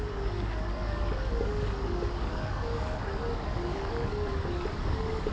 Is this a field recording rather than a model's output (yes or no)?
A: no